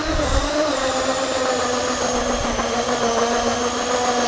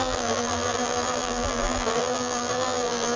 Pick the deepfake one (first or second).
second